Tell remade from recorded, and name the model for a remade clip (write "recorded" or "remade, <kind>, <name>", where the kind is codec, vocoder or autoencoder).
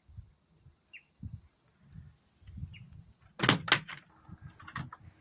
recorded